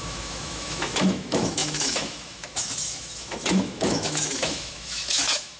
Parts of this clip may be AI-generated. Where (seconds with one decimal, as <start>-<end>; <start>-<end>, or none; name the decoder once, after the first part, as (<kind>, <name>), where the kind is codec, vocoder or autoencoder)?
0.0-5.6 (autoencoder, DAC-VAE)